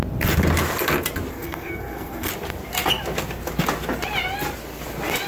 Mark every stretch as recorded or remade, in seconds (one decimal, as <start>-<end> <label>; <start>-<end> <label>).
0.0-1.3 recorded; 1.3-2.3 remade; 2.3-5.3 recorded